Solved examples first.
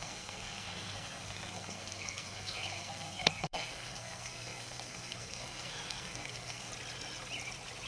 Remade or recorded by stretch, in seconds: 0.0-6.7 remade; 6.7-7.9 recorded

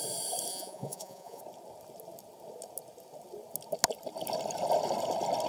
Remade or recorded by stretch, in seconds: 0.0-0.5 recorded; 0.5-1.4 remade; 1.4-5.5 recorded

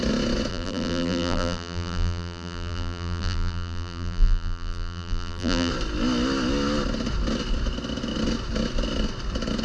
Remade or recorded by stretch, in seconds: 0.0-0.5 recorded; 0.5-5.7 remade; 5.7-9.6 recorded

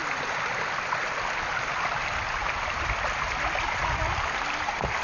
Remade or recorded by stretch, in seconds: 0.0-5.0 recorded

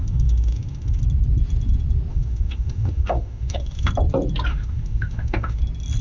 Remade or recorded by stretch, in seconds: 0.0-1.0 remade; 1.0-2.1 recorded; 2.1-3.9 remade; 3.9-4.5 recorded; 4.5-5.6 remade; 5.6-6.0 recorded

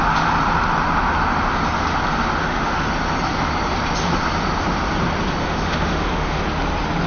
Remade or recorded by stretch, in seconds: 0.0-2.4 recorded; 2.4-2.9 remade; 2.9-5.4 recorded; 5.4-6.4 remade; 6.4-7.1 recorded